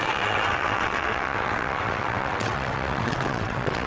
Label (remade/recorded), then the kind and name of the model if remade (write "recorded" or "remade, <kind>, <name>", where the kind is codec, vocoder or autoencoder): remade, vocoder, WaveNeXt